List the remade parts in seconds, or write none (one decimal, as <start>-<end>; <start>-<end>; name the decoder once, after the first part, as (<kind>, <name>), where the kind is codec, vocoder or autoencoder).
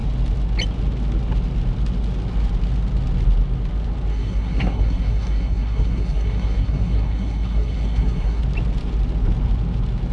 4.1-8.4 (codec, SNAC)